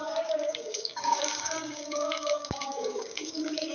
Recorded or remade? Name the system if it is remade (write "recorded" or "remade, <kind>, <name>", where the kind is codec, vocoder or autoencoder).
remade, codec, DAC